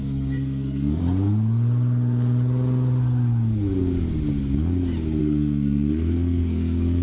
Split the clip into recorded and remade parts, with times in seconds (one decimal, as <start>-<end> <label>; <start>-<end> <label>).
0.0-1.0 remade; 1.0-5.2 recorded; 5.2-7.0 remade